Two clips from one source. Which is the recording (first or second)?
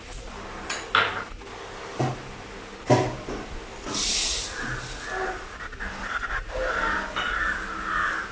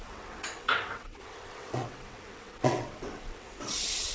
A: first